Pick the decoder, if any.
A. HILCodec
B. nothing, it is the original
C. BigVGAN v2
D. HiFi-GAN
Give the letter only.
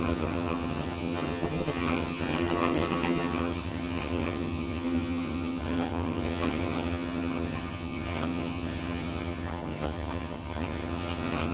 D